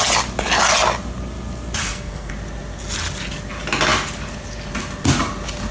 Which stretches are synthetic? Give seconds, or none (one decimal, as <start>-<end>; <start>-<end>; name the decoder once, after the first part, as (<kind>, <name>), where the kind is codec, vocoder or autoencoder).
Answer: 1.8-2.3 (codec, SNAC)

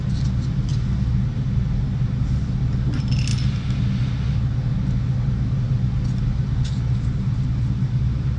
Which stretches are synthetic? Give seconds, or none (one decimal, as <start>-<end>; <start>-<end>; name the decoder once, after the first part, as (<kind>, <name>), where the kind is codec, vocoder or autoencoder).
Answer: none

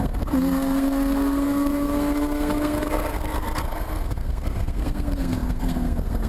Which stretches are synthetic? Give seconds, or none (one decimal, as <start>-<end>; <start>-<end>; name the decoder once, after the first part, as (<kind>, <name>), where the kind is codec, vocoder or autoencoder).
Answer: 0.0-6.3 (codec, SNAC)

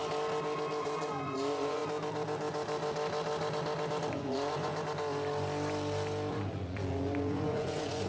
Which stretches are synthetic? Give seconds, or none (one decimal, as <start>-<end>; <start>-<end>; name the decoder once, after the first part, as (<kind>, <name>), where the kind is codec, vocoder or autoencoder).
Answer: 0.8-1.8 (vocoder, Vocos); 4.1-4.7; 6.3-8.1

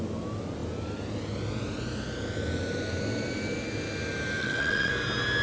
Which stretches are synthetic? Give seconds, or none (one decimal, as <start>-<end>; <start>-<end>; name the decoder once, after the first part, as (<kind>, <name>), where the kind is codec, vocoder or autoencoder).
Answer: 4.4-4.9 (vocoder, WaveNeXt)

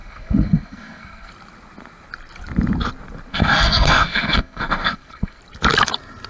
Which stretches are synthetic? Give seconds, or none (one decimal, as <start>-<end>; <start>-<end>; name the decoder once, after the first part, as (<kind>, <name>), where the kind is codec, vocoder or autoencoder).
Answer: 0.0-1.3 (codec, SNAC); 3.3-5.4

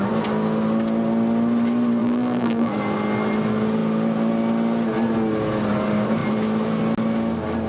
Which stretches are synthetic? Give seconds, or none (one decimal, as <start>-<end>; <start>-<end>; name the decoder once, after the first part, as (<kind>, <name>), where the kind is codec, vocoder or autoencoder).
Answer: 2.0-2.7 (vocoder, BigVGAN v2)